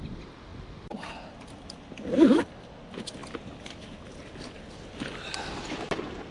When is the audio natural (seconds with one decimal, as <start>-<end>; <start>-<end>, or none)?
0.0-6.3